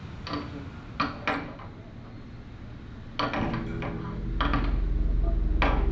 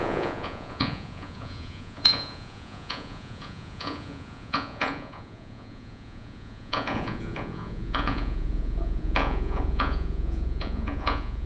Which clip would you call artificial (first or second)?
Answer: second